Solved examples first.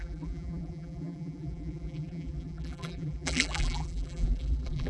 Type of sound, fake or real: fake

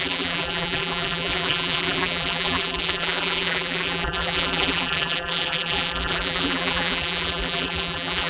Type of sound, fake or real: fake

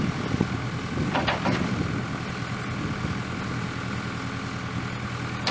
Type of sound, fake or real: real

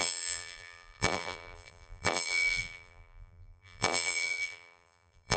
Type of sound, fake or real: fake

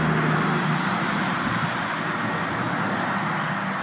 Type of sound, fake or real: real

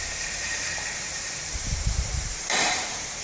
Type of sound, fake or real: fake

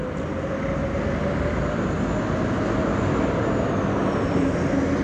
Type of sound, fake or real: real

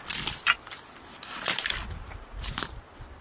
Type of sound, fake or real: real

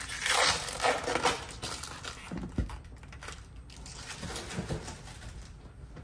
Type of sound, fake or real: real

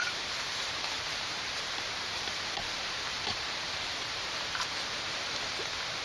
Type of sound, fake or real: fake